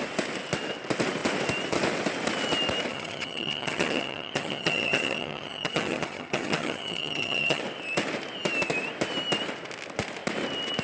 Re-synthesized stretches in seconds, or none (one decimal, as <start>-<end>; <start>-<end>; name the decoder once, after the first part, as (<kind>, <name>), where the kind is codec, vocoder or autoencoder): 2.9-7.6 (vocoder, HiFi-GAN)